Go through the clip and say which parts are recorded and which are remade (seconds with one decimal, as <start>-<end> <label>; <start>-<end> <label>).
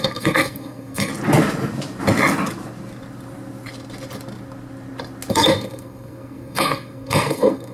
0.0-1.1 remade; 1.1-5.3 recorded; 5.3-7.7 remade